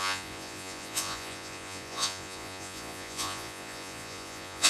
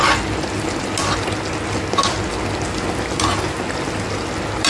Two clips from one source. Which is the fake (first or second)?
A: first